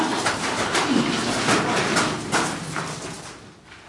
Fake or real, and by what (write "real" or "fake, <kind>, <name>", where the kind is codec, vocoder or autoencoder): real